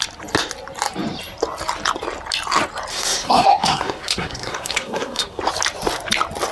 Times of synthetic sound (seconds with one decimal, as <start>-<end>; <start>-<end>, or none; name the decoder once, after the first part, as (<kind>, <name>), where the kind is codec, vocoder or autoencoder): 2.9-5.4 (codec, SNAC)